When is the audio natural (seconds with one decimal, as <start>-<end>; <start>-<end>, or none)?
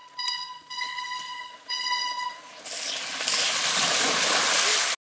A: 2.6-5.0